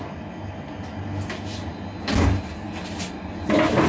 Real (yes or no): yes